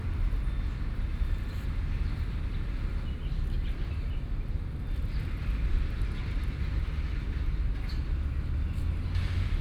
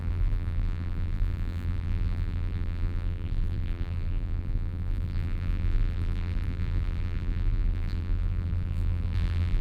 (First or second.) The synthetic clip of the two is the second